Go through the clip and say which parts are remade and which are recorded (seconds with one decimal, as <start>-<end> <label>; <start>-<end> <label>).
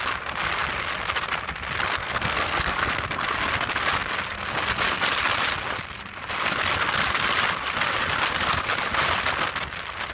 0.0-2.0 recorded; 2.0-2.9 remade; 2.9-10.1 recorded